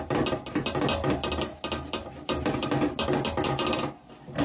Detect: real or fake real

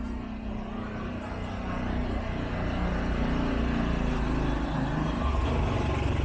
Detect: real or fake real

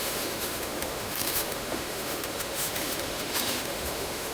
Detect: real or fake fake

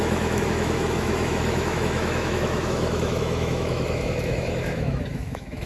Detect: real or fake fake